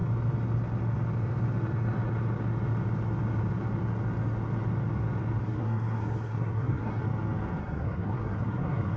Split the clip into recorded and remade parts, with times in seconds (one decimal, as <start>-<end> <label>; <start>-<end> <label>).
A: 0.0-5.4 recorded; 5.4-7.0 remade; 7.0-7.6 recorded; 7.6-9.0 remade